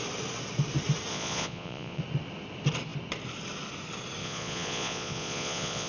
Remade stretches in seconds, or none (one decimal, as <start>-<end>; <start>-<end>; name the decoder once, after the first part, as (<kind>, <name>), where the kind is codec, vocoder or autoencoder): 1.1-2.0 (vocoder, Vocos); 4.2-5.9